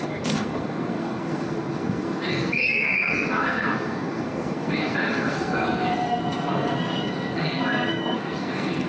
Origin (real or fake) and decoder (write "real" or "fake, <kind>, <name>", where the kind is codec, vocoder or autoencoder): fake, codec, SNAC